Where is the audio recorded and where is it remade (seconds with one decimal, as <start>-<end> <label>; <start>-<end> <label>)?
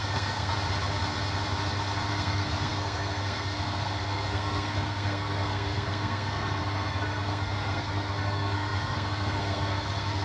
0.0-0.5 remade; 0.5-2.1 recorded; 2.1-10.2 remade